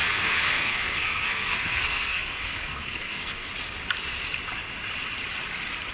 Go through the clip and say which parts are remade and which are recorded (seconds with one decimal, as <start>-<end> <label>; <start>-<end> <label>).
0.0-3.5 remade; 3.5-5.9 recorded